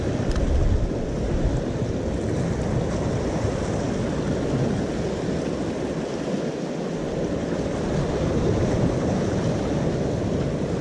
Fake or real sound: real